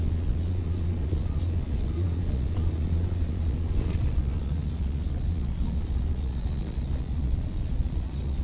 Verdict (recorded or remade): remade